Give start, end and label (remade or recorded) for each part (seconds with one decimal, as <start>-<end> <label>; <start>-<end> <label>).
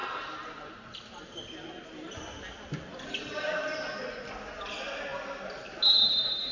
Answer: 0.0-6.5 recorded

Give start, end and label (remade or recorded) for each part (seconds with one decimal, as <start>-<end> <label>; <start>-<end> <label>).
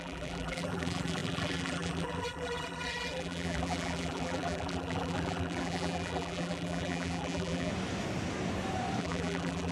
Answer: 0.0-7.7 remade; 7.7-9.0 recorded; 9.0-9.7 remade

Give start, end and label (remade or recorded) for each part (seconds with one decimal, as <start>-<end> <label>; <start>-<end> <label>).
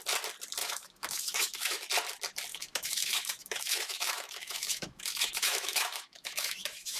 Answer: 0.0-0.6 recorded; 0.6-1.9 remade; 1.9-2.5 recorded; 2.5-7.0 remade